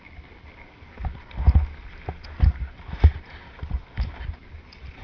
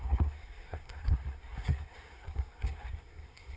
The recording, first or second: first